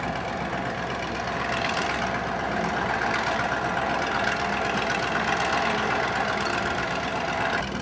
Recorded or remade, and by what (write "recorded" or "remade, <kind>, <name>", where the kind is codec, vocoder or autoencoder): recorded